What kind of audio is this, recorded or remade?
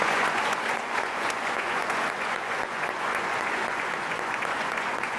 remade